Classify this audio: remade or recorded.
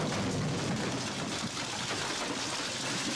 recorded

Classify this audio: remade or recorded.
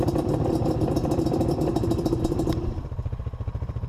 remade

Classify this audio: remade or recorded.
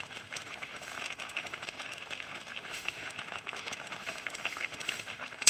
remade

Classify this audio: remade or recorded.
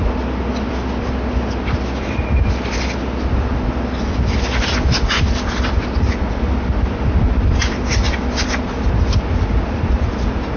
recorded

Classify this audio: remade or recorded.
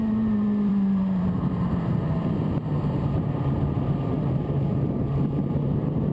remade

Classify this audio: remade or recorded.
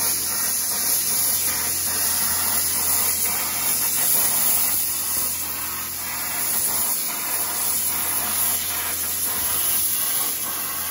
recorded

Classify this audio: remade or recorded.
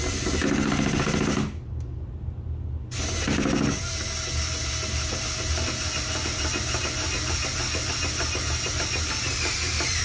recorded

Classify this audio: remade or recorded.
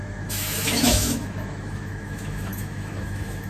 remade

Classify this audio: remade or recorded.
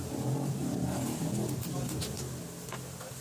recorded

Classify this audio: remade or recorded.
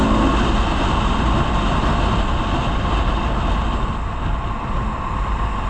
recorded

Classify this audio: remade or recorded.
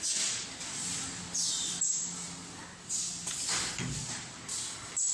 recorded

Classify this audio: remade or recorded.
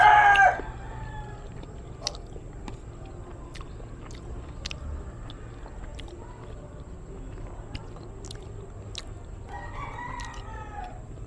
recorded